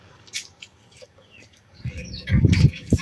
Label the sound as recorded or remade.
remade